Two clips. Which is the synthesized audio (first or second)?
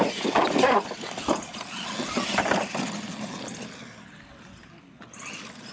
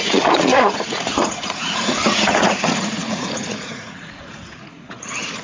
second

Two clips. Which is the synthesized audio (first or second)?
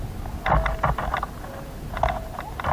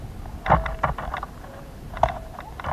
second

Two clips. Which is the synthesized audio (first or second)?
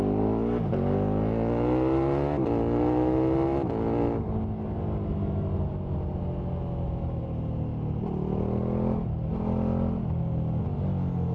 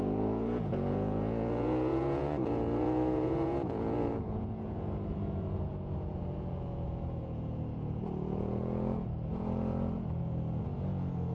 second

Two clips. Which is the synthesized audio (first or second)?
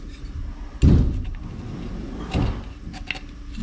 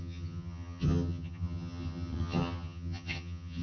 second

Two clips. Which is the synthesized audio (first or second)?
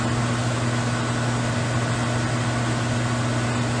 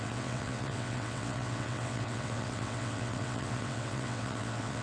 second